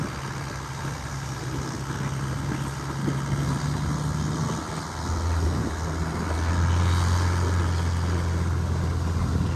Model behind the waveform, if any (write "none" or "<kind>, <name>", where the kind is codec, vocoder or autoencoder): none